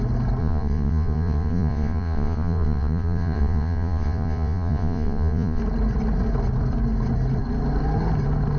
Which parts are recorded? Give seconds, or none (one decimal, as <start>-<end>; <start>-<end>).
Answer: 0.0-0.4; 5.6-8.6